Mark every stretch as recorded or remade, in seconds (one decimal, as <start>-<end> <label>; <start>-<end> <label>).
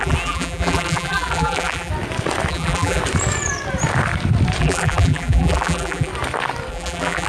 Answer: 0.0-1.9 remade; 1.9-2.5 recorded; 2.5-3.0 remade; 3.0-4.6 recorded; 4.6-6.1 remade; 6.1-6.7 recorded; 6.7-7.3 remade